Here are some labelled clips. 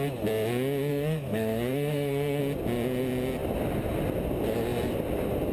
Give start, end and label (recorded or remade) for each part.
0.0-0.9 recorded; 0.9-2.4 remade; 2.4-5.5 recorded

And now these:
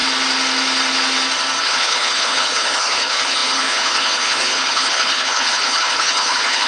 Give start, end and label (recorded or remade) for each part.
0.0-1.6 recorded; 1.6-6.7 remade

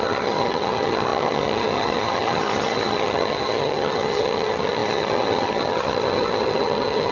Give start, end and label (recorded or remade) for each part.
0.0-7.1 remade

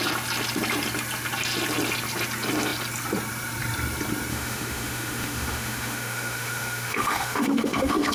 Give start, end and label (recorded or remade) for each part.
0.0-4.3 recorded; 4.3-8.1 remade

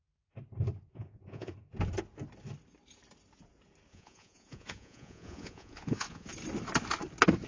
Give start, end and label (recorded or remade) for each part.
0.0-0.9 recorded; 0.9-1.5 remade; 1.5-3.9 recorded; 3.9-6.3 remade; 6.3-7.5 recorded